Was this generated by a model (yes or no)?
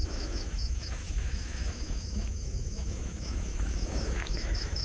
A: yes